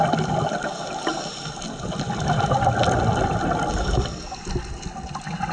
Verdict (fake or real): real